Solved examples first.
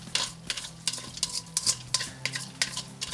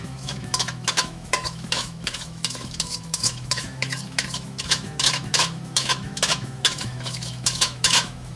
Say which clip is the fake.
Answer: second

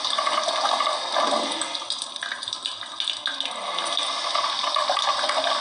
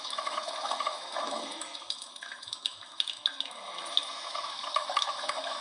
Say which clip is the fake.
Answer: second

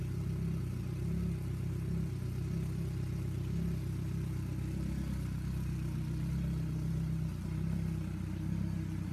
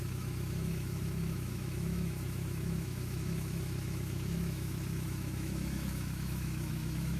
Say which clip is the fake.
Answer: second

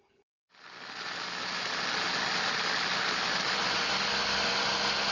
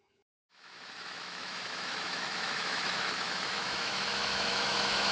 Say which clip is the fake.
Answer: second